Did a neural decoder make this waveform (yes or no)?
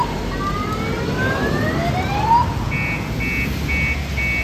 no